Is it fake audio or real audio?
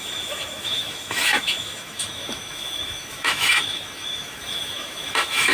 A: fake